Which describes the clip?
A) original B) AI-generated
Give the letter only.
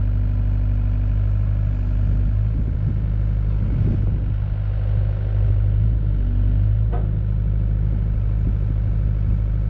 A